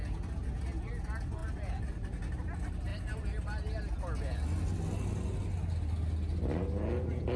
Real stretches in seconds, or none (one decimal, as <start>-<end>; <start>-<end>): 0.0-7.4